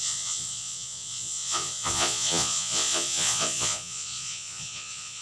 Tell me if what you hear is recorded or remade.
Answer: remade